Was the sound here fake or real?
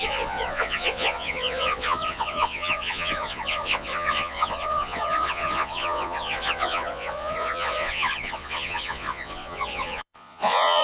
fake